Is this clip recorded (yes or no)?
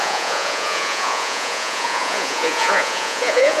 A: no